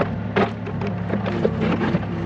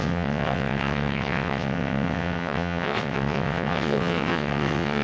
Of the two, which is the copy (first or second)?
second